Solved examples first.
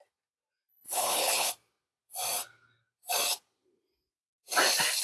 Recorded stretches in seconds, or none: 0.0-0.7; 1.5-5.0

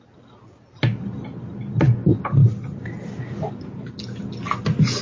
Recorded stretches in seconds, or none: 0.0-5.0

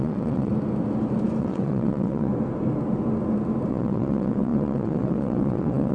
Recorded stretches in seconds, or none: 0.5-1.4; 2.3-3.7